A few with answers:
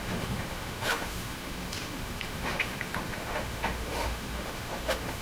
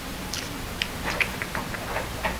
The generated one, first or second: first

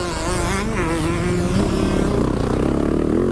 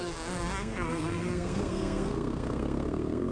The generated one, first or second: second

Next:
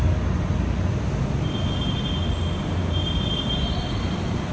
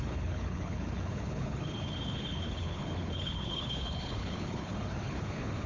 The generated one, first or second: second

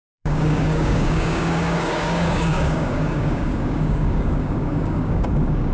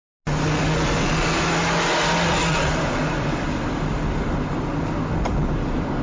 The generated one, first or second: first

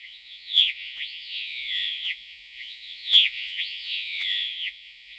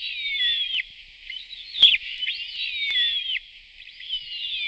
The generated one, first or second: first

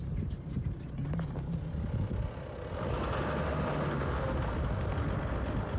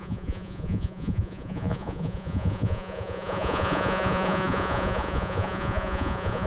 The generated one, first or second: second